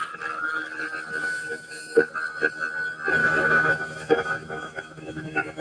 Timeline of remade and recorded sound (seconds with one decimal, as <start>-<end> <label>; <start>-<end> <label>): 0.0-1.2 recorded; 1.2-2.1 remade; 2.1-3.2 recorded; 3.2-5.6 remade